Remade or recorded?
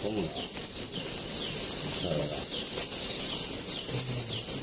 recorded